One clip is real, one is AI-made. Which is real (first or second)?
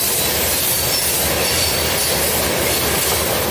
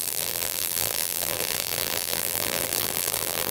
first